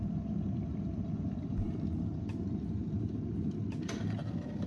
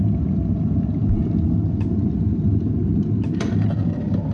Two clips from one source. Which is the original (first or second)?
second